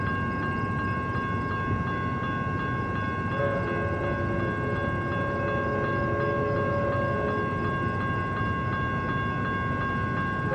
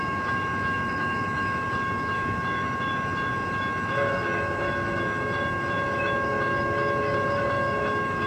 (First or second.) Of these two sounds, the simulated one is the second